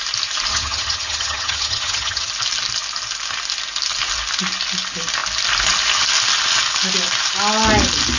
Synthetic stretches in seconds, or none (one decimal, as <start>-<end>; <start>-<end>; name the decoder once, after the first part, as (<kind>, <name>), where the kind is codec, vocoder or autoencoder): 0.5-2.3 (vocoder, HiFi-GAN)